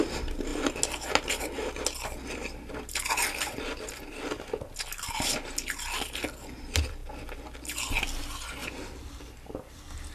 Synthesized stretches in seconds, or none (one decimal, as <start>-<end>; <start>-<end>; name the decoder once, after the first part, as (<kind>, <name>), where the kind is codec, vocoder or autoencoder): none